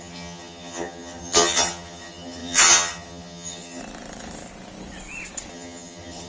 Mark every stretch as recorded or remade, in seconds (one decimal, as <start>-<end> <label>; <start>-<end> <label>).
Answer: 0.0-3.8 remade; 3.8-5.5 recorded; 5.5-6.3 remade